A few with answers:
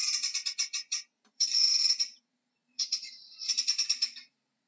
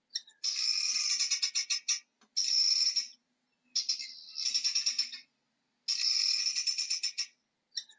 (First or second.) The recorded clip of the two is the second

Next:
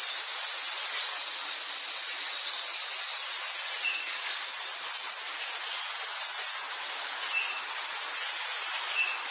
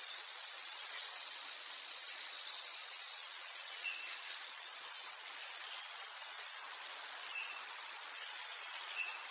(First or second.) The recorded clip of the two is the first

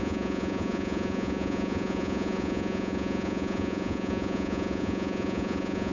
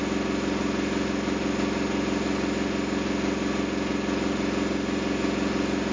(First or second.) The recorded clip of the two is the second